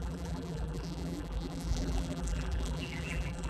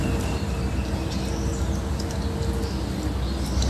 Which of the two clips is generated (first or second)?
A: first